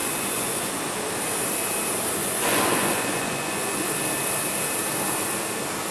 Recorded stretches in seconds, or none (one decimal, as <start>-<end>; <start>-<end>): 0.8-2.2; 3.9-5.9